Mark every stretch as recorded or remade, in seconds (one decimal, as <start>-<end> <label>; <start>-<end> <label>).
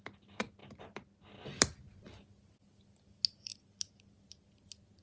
0.0-5.0 recorded